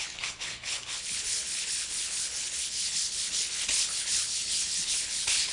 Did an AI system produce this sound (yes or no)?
yes